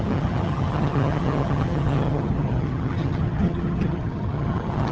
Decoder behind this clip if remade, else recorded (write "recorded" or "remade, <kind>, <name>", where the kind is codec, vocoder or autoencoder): remade, vocoder, HiFi-GAN